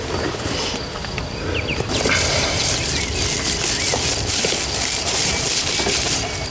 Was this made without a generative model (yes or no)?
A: yes